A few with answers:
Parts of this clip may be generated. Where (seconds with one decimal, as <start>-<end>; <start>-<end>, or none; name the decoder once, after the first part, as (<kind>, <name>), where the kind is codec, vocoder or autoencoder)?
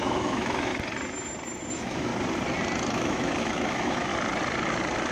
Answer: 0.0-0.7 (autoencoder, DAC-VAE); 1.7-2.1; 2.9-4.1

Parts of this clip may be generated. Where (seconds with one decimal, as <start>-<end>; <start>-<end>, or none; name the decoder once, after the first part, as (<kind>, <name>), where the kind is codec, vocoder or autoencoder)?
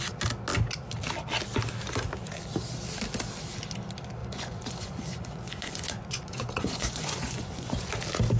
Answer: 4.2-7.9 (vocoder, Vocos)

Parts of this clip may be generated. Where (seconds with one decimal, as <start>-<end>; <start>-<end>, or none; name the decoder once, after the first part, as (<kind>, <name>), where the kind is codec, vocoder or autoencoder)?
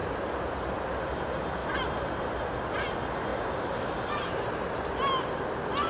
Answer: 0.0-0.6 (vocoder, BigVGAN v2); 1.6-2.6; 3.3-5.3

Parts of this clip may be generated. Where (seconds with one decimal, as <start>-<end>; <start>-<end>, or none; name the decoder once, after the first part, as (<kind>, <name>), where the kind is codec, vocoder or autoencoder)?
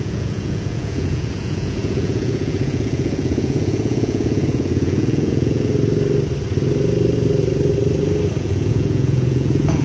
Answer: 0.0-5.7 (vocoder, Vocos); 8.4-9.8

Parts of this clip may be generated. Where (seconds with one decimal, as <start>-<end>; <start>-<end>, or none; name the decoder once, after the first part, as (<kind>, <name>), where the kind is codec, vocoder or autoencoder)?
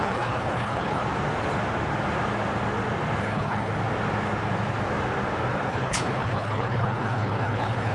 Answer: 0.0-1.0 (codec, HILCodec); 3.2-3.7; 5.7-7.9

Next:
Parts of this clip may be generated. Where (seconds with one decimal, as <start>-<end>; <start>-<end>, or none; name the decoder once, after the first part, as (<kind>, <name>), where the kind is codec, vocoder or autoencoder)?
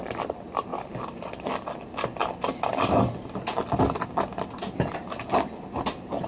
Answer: none